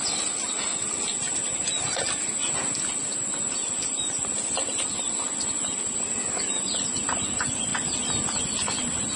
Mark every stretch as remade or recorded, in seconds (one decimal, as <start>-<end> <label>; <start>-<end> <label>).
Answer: 0.0-9.2 recorded